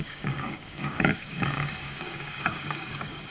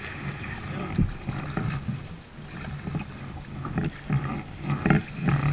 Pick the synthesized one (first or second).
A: first